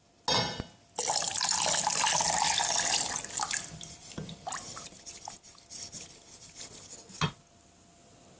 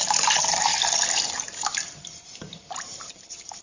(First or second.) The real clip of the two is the first